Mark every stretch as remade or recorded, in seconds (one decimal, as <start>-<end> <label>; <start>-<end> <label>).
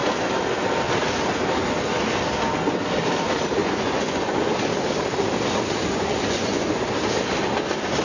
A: 0.0-3.6 recorded; 3.6-4.5 remade; 4.5-5.8 recorded; 5.8-6.8 remade; 6.8-8.0 recorded